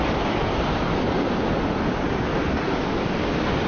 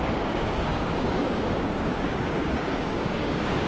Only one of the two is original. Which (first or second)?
first